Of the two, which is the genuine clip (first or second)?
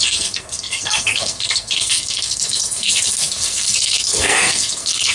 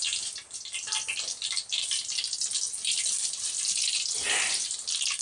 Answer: second